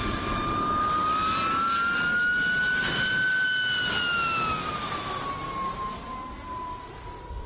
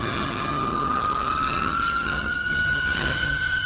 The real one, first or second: first